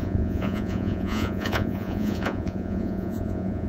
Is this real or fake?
fake